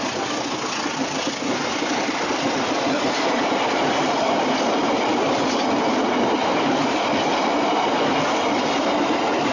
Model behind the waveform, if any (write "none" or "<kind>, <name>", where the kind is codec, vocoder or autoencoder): none